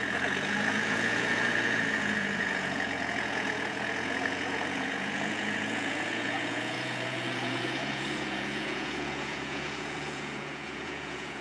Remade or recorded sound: remade